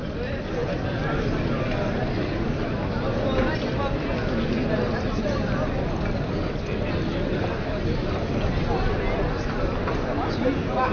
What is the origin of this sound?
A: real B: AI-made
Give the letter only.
A